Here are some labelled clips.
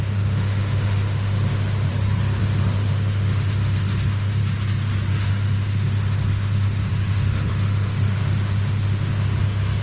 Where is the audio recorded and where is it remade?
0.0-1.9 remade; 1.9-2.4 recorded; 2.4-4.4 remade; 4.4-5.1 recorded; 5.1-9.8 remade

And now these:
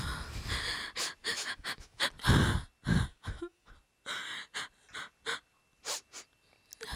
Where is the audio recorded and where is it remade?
0.0-1.2 recorded; 1.2-2.1 remade; 2.1-3.1 recorded; 3.1-3.7 remade; 3.7-7.0 recorded

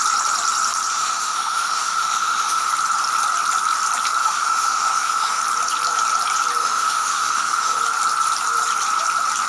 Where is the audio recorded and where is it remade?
0.0-0.9 recorded; 0.9-2.7 remade; 2.7-4.2 recorded; 4.2-5.4 remade; 5.4-6.6 recorded; 6.6-7.8 remade; 7.8-9.5 recorded

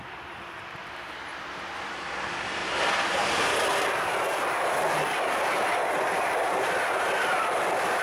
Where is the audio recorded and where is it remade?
0.0-8.0 recorded

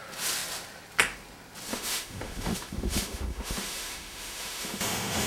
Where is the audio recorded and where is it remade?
0.0-1.7 recorded; 1.7-5.3 remade

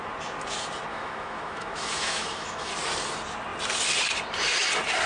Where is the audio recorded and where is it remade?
0.0-0.9 recorded; 0.9-2.7 remade; 2.7-5.1 recorded

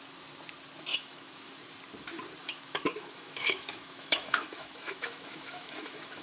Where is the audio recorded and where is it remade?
0.0-0.9 recorded; 0.9-1.5 remade; 1.5-2.4 recorded; 2.4-6.2 remade

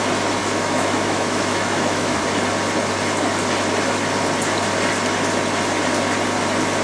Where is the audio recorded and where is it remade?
0.0-0.4 recorded; 0.4-2.2 remade; 2.2-6.8 recorded